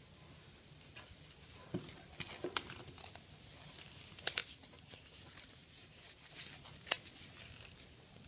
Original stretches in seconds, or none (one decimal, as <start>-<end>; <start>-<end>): 0.0-4.4; 6.3-8.3